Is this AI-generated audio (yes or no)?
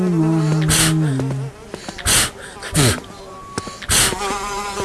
no